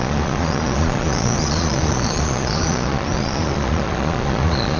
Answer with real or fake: fake